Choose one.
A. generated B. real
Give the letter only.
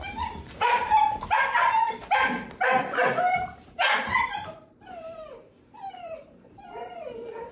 A